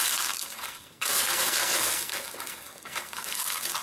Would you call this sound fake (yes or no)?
yes